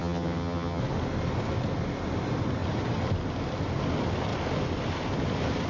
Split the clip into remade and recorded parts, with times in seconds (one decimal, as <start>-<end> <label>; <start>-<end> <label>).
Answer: 0.0-0.8 remade; 0.8-5.7 recorded